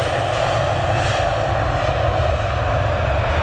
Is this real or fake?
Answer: real